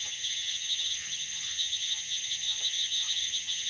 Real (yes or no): no